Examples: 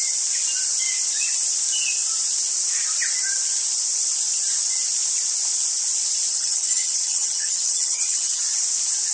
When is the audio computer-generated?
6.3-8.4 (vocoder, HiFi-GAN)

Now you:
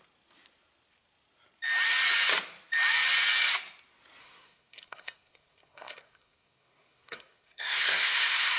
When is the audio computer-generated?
4.2-8.6 (codec, SNAC)

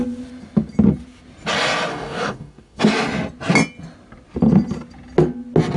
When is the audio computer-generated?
1.9-2.8 (codec, DAC)

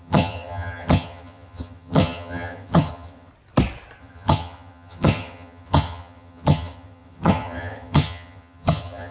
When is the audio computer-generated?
0.0-3.3 (vocoder, HiFi-GAN); 4.0-9.1

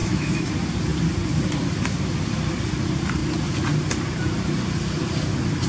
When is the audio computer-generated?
0.0-0.5 (autoencoder, DAC-VAE)

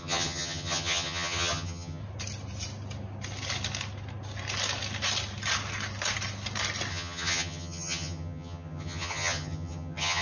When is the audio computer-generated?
0.0-2.0 (vocoder, HiFi-GAN); 6.9-10.2